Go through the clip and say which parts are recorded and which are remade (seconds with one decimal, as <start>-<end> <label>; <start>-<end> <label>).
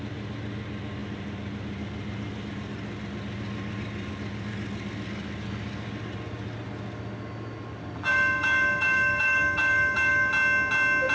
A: 0.0-8.1 recorded; 8.1-10.3 remade; 10.3-11.1 recorded